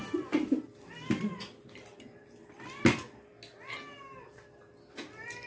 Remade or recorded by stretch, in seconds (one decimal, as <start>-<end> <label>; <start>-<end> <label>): 0.0-5.5 recorded